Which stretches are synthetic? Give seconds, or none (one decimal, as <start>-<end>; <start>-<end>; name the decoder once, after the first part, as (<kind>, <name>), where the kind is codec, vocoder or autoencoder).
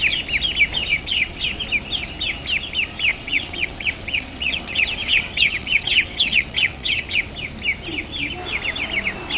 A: 0.9-1.4 (vocoder, WaveNeXt); 3.1-7.3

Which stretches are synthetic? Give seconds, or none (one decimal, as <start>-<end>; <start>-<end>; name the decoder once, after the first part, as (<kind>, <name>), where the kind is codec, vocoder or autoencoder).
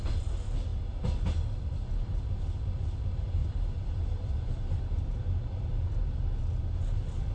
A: none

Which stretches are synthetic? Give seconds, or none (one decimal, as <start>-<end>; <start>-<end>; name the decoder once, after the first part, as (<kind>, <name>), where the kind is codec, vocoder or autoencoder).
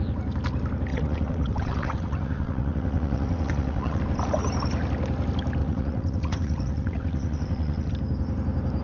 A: 0.9-4.0 (vocoder, WaveNeXt); 5.6-7.9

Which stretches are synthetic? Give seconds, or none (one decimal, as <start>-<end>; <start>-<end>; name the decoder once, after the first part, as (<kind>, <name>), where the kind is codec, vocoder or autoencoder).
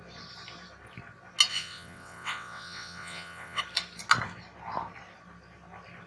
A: 1.5-3.6 (vocoder, WaveNeXt)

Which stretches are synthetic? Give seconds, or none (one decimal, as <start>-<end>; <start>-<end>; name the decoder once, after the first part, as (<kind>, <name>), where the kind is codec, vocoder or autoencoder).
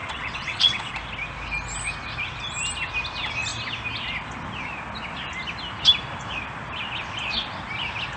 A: 0.0-0.9 (vocoder, WaveNeXt)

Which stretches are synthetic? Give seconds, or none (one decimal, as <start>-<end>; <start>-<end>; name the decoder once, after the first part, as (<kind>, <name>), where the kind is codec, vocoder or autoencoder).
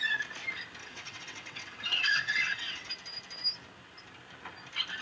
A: 0.8-2.9 (vocoder, WaveNeXt)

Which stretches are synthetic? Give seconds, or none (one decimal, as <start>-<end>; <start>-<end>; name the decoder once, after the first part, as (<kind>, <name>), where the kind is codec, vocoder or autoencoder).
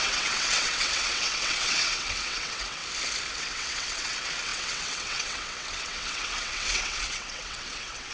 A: 0.0-2.8 (vocoder, WaveNeXt); 3.4-8.1